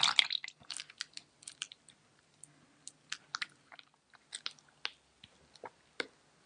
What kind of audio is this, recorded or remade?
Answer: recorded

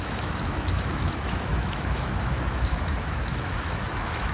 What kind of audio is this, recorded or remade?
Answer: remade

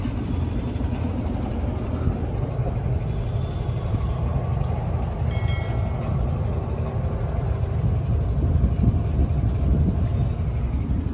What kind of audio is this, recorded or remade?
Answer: recorded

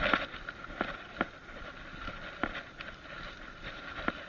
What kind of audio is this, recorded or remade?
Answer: recorded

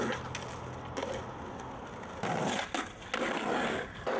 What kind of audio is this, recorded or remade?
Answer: recorded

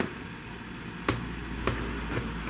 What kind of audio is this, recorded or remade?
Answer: recorded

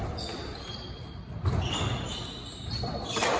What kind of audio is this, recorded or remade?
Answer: recorded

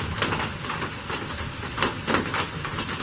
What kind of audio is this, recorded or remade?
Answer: recorded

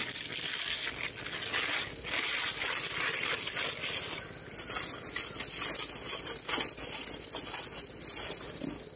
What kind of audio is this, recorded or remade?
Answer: recorded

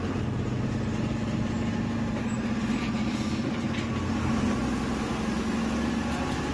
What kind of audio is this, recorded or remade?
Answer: recorded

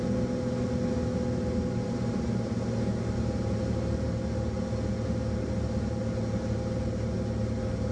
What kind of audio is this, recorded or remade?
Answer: recorded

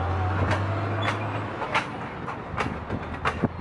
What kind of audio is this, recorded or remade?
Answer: recorded